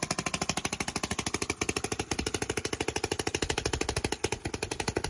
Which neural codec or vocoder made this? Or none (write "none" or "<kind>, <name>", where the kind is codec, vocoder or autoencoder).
none